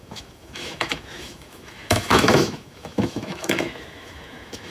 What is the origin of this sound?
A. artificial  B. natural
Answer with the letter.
A